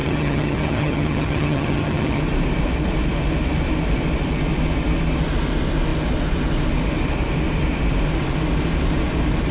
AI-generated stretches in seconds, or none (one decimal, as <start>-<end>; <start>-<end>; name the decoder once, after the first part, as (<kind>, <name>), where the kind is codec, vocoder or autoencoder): 0.0-2.2 (vocoder, HiFi-GAN)